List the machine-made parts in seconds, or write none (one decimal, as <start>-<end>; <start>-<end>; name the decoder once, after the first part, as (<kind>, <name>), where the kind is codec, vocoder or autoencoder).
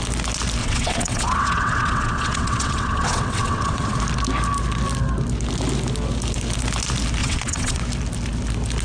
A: 0.6-4.0 (vocoder, WaveNeXt); 7.2-7.8